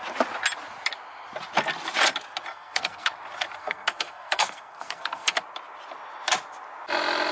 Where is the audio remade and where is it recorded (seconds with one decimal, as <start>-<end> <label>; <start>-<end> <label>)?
0.0-2.5 recorded; 2.5-3.1 remade; 3.1-3.6 recorded; 3.6-5.4 remade; 5.4-7.3 recorded